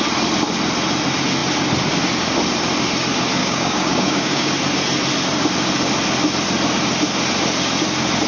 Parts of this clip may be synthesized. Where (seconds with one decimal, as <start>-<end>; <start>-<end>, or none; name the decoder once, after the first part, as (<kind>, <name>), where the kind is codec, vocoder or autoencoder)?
3.4-4.5 (codec, DAC)